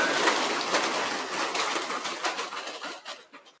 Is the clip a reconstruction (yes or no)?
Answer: no